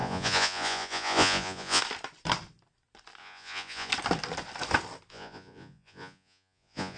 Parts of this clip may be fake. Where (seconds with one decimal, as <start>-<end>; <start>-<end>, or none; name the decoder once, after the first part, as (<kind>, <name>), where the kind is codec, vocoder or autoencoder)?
0.0-1.8 (vocoder, Vocos); 3.2-3.9; 5.1-7.0